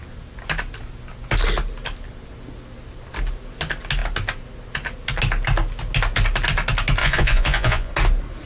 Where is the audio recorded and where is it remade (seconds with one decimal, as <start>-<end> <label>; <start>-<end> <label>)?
0.0-7.0 recorded; 7.0-7.9 remade; 7.9-8.5 recorded